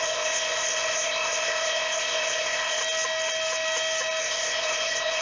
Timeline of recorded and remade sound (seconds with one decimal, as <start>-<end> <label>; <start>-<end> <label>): 0.0-2.8 remade; 2.8-4.2 recorded; 4.2-5.2 remade